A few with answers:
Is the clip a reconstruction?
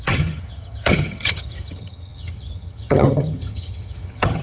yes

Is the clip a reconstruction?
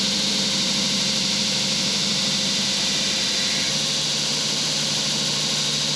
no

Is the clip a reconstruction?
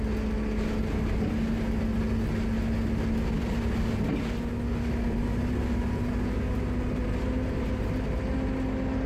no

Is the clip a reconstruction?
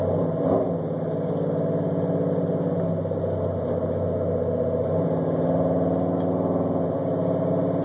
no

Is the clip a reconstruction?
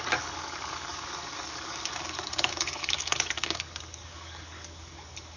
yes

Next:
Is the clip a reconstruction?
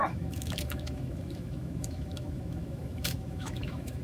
yes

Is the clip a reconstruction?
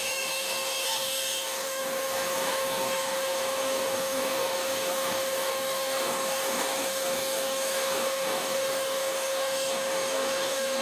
yes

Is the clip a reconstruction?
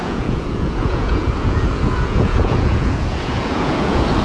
yes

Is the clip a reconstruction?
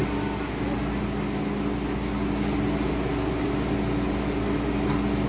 no